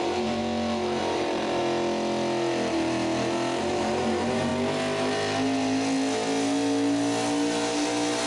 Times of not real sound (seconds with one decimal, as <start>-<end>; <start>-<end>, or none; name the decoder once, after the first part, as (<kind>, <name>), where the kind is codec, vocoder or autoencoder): 0.0-0.4 (vocoder, BigVGAN v2); 1.0-1.6; 3.7-4.5